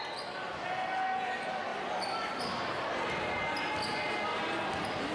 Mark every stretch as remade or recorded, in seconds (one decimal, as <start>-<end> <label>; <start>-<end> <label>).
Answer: 0.0-5.1 recorded